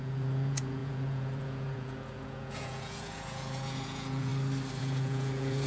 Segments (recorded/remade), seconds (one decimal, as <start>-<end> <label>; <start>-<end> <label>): 0.0-4.3 remade; 4.3-4.8 recorded; 4.8-5.7 remade